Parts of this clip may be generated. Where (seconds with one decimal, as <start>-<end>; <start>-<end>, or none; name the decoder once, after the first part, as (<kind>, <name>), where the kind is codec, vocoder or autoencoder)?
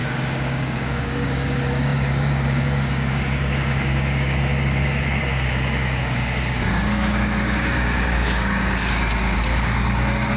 0.0-10.4 (codec, DAC)